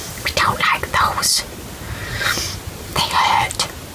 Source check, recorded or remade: recorded